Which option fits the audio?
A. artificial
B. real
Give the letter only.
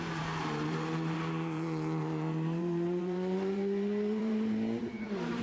A